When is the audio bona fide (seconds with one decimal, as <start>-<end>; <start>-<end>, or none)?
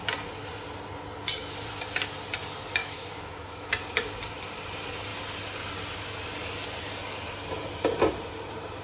0.0-2.8; 3.7-8.8